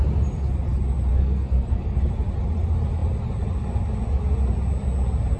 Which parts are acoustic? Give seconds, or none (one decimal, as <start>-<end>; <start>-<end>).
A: 0.0-1.1; 2.1-5.4